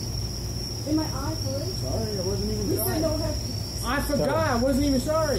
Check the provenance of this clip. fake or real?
real